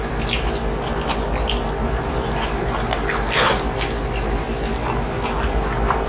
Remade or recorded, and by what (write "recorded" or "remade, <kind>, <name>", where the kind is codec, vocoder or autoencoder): recorded